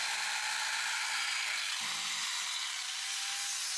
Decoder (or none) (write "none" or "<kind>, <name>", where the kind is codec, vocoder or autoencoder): none